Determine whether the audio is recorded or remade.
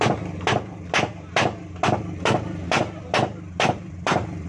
remade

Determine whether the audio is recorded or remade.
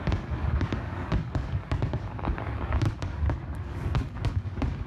remade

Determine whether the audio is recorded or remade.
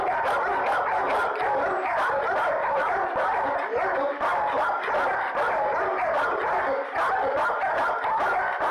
recorded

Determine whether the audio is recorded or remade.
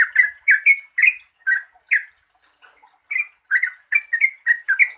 recorded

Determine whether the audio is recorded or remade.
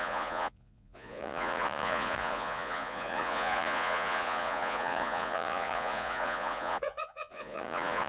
remade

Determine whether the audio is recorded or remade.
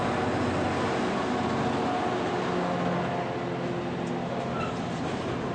recorded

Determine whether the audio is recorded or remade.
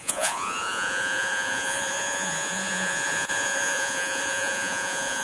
remade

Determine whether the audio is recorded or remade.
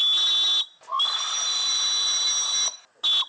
recorded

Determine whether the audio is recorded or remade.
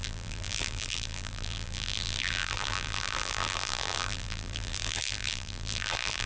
remade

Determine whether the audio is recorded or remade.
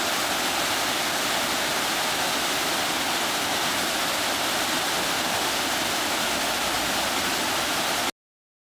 recorded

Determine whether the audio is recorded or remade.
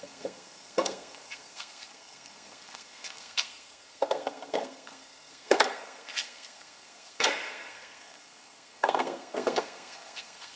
remade